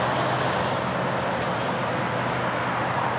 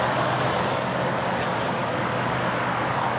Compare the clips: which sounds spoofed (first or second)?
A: second